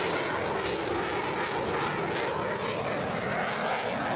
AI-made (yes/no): no